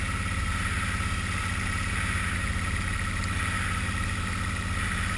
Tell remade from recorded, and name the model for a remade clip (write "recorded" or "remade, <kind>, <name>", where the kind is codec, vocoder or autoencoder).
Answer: recorded